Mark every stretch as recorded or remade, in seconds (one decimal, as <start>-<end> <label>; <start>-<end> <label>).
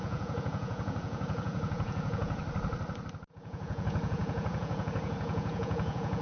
0.0-2.4 remade; 2.4-3.3 recorded; 3.3-6.2 remade